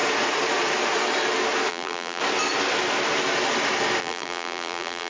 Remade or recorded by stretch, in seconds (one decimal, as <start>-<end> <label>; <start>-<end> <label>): 0.0-1.7 recorded; 1.7-2.2 remade; 2.2-4.0 recorded; 4.0-5.1 remade